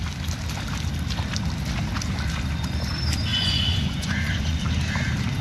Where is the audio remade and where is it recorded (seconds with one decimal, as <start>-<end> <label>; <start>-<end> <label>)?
0.0-3.3 recorded; 3.3-4.6 remade; 4.6-5.4 recorded